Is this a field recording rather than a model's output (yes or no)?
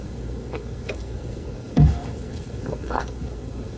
no